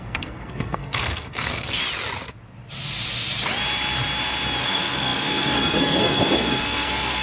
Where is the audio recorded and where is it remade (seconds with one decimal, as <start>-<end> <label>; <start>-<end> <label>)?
0.0-1.8 remade; 1.8-4.6 recorded; 4.6-7.2 remade